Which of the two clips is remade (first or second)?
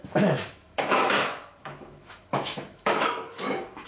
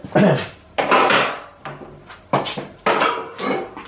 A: first